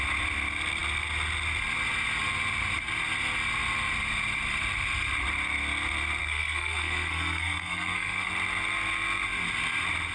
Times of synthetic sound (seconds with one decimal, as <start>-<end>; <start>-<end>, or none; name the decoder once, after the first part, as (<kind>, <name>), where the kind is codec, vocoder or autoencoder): 6.2-8.3 (codec, SNAC)